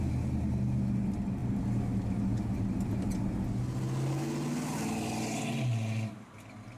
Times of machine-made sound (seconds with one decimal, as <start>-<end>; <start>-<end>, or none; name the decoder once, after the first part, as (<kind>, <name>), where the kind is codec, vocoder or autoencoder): none